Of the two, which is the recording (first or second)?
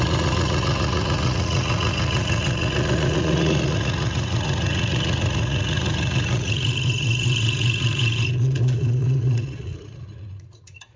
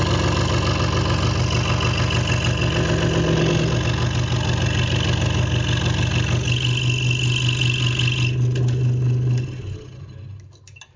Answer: second